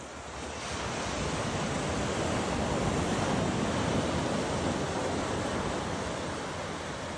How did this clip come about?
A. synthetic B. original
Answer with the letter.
B